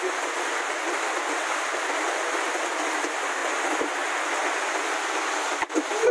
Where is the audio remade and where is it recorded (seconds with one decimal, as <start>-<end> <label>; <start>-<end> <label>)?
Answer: 0.0-6.1 recorded